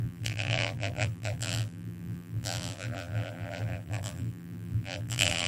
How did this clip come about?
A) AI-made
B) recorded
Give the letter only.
A